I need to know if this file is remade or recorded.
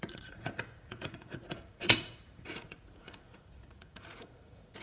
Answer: remade